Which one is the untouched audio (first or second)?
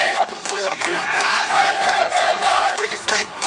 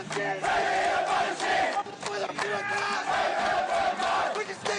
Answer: second